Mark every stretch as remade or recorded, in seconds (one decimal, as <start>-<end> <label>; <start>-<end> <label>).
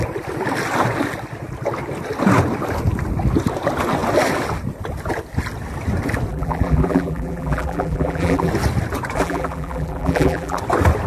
0.0-6.3 recorded; 6.3-8.5 remade; 8.5-9.2 recorded; 9.2-10.6 remade; 10.6-11.1 recorded